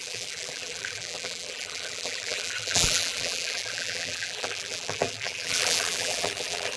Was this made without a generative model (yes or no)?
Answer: no